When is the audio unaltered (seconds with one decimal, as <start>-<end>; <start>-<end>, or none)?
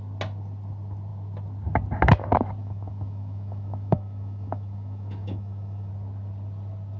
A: 0.0-2.6; 5.9-7.0